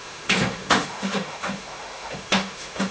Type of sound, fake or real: fake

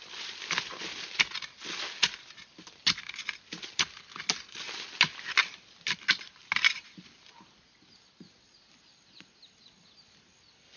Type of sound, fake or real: real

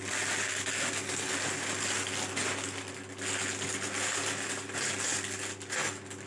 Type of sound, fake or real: real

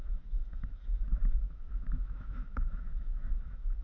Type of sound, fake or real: fake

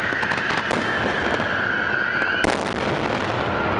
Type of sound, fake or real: real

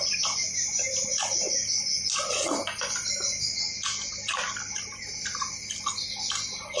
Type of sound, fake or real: real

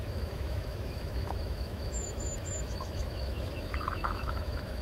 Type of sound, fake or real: fake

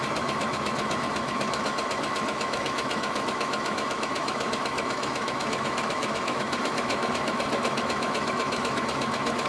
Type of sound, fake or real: fake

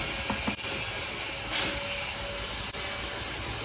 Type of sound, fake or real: real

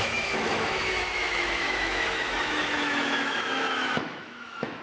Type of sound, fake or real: fake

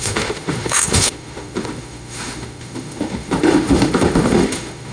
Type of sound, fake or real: fake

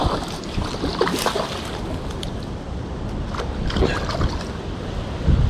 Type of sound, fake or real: real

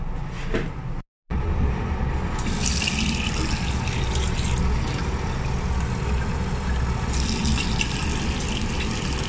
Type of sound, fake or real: real